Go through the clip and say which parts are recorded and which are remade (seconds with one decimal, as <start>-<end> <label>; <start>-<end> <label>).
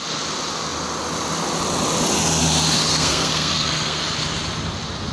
0.0-2.9 recorded; 2.9-4.0 remade; 4.0-5.1 recorded